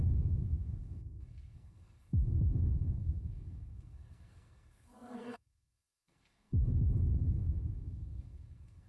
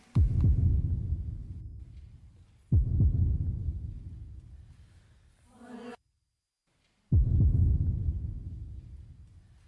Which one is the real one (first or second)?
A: second